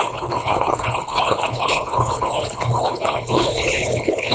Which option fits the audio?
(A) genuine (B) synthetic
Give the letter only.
B